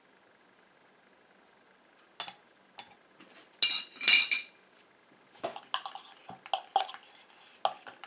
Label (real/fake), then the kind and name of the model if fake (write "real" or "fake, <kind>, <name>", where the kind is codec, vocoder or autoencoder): real